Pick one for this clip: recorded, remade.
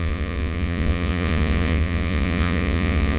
remade